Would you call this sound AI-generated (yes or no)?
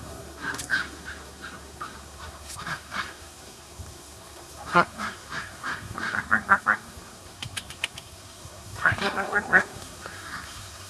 yes